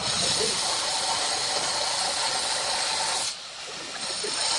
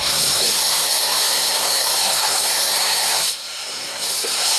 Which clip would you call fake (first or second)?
second